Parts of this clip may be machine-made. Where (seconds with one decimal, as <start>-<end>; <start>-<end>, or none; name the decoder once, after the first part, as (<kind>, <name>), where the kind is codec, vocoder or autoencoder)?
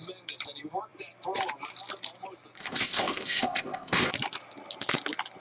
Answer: 2.6-4.1 (codec, ZipCodec)